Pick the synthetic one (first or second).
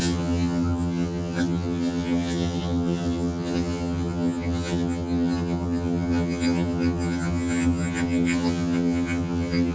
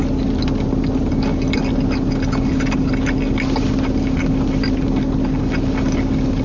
first